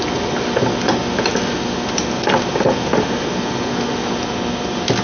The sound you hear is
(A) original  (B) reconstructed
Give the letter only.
A